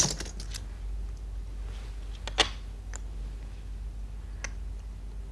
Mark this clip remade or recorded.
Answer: recorded